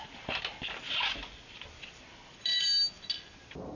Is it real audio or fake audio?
real